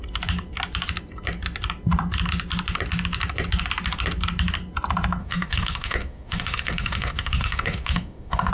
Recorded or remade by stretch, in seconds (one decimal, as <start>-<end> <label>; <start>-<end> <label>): 0.0-5.2 recorded; 5.2-8.5 remade